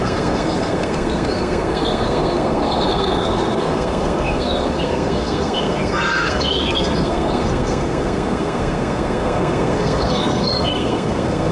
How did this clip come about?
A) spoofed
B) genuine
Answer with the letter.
A